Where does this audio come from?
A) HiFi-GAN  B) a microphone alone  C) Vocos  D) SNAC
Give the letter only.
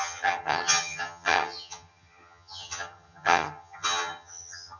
A